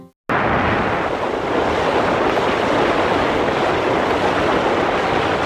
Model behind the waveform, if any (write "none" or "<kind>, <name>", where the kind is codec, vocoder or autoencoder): none